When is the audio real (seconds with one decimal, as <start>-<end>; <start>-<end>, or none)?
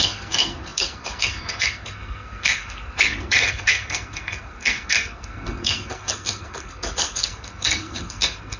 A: none